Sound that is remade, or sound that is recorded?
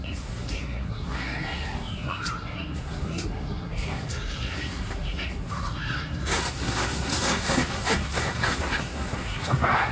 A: remade